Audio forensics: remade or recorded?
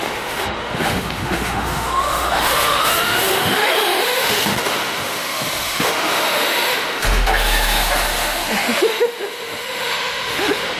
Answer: remade